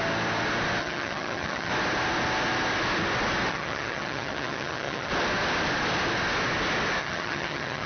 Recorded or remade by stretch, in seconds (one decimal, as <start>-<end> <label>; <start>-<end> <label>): 0.0-0.8 recorded; 0.8-1.7 remade; 1.7-3.5 recorded; 3.5-5.1 remade; 5.1-7.0 recorded; 7.0-7.9 remade